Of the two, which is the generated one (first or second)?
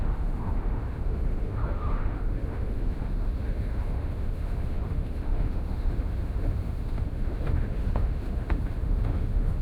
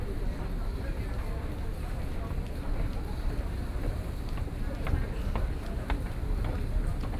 first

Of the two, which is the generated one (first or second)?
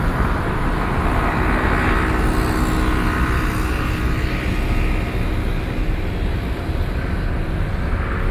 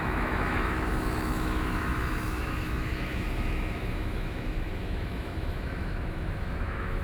second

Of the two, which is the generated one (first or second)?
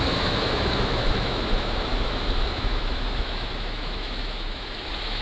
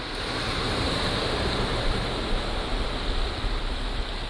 first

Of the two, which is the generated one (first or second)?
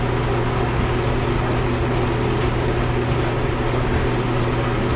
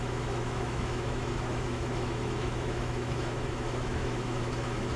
second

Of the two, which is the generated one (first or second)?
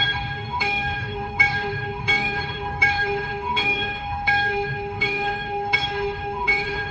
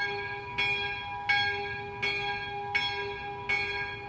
first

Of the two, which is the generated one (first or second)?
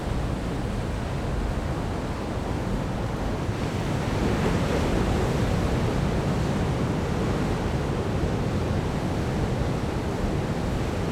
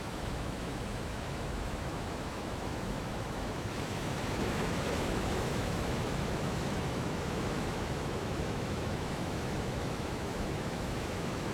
second